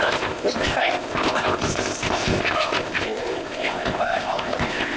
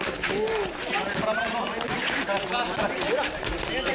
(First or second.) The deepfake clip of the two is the first